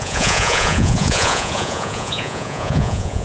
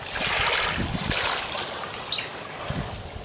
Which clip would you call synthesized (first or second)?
first